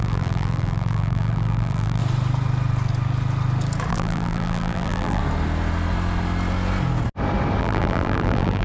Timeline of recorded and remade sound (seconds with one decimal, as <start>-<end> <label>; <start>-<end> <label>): 0.0-2.0 remade; 2.0-3.9 recorded; 3.9-5.2 remade; 5.2-7.6 recorded; 7.6-8.6 remade